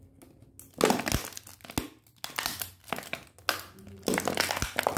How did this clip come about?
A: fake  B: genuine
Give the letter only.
B